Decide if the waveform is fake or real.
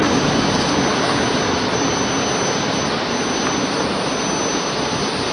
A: real